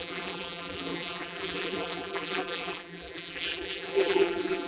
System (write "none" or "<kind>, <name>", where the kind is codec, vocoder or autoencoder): vocoder, BigVGAN v2